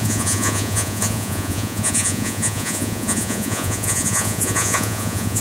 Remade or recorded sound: remade